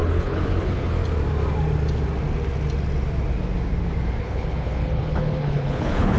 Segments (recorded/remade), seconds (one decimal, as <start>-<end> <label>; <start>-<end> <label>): 0.0-1.0 remade; 1.0-4.2 recorded; 4.2-6.2 remade

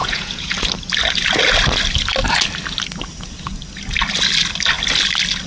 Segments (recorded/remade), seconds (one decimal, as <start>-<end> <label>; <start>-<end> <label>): 0.0-0.5 remade; 0.5-5.5 recorded

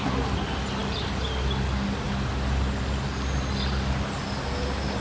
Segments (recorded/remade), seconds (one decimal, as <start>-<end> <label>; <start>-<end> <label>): 0.0-5.0 recorded